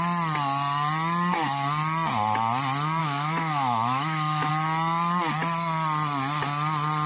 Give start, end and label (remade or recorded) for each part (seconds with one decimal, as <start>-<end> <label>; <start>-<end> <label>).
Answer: 0.0-3.0 recorded; 3.0-4.5 remade; 4.5-7.1 recorded